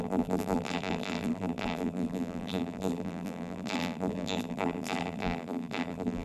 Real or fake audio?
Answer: fake